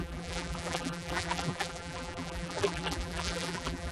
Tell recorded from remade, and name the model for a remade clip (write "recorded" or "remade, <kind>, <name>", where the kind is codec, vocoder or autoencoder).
remade, vocoder, BigVGAN v2